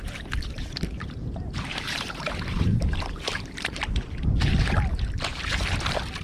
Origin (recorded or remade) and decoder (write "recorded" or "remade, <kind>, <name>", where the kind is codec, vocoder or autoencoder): remade, vocoder, BigVGAN v2